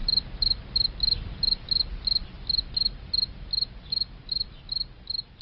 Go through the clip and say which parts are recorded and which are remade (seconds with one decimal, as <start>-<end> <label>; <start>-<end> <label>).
0.0-1.6 remade; 1.6-2.2 recorded; 2.2-5.4 remade